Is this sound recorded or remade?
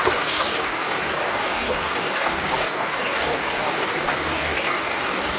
remade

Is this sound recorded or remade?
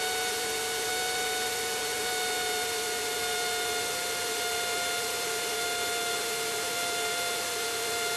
recorded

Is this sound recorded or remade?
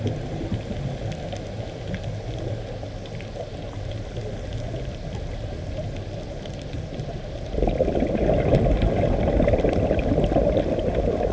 recorded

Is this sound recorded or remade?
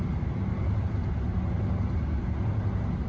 recorded